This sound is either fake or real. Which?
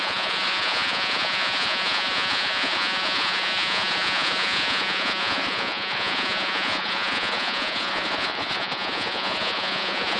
fake